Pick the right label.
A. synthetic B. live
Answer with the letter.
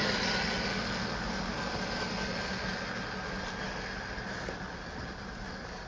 B